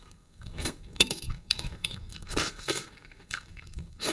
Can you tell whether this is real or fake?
fake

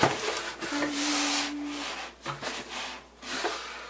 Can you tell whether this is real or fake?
real